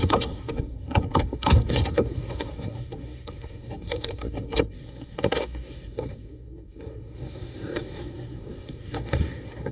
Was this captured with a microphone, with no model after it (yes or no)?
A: no